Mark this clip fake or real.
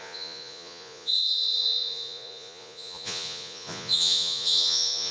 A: fake